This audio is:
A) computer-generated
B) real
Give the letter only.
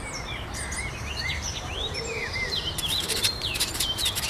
A